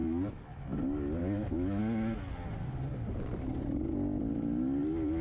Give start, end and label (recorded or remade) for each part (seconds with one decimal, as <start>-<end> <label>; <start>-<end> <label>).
0.0-1.2 recorded; 1.2-1.8 remade; 1.8-5.2 recorded